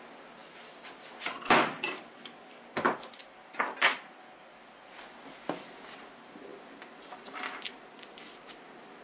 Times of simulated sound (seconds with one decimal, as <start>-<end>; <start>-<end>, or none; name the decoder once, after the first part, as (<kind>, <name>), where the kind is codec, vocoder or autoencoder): none